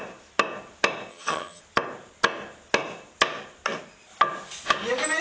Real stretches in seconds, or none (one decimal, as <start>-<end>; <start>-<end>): 0.0-1.1; 1.6-5.2